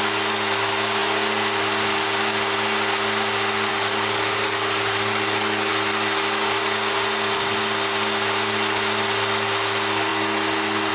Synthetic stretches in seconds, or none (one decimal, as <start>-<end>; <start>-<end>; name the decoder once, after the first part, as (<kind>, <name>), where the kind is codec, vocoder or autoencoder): 3.7-5.7 (codec, DAC)